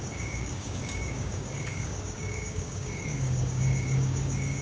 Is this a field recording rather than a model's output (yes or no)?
no